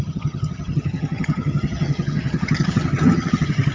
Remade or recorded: remade